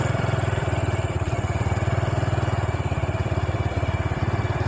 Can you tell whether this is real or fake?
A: fake